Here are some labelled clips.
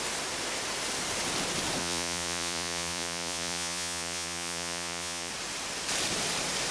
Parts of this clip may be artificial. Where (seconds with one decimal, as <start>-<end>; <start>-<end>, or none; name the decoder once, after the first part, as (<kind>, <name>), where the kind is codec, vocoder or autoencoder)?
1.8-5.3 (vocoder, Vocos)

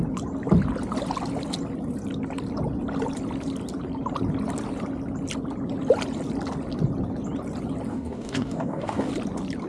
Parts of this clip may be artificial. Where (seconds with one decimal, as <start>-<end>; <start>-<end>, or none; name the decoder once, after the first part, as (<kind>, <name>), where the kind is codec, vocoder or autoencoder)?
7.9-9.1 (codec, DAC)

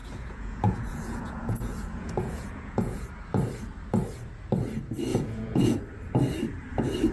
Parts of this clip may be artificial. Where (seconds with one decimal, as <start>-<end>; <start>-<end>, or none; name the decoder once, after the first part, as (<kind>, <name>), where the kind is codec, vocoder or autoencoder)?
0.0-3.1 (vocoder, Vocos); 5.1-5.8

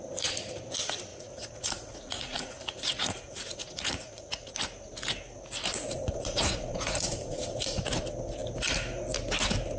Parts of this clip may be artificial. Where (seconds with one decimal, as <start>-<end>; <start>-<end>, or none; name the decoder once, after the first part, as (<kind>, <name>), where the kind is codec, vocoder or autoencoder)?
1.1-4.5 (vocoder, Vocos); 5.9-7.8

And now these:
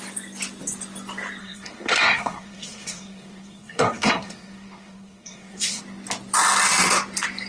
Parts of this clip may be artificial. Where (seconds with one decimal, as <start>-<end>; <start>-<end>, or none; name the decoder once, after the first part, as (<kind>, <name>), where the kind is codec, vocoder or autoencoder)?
1.4-5.8 (codec, SNAC)

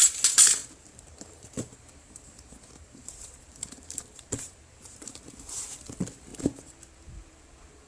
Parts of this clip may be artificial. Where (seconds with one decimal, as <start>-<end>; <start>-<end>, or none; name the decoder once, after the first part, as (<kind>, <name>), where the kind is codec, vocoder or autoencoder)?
0.6-5.2 (vocoder, BigVGAN v2); 6.3-6.8

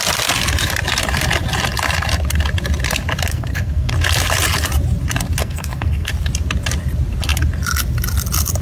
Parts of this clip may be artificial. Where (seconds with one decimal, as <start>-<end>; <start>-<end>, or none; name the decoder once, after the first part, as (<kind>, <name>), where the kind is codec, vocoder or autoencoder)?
3.3-3.9 (codec, SNAC); 5.4-6.1

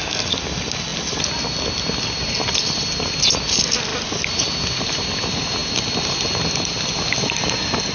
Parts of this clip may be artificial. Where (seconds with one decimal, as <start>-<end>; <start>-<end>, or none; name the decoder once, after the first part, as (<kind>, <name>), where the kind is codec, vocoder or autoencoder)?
none